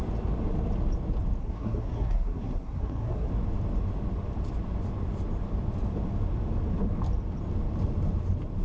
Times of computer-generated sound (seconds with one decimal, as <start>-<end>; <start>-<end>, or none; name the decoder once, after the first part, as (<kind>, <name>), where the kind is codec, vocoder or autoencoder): 1.4-3.3 (codec, SNAC)